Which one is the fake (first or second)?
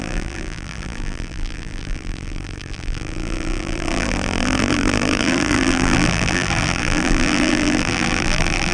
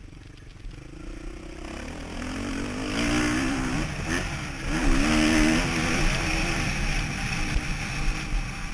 first